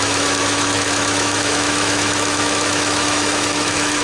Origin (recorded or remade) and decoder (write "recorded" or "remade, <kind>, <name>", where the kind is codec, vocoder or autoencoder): remade, autoencoder, DAC-VAE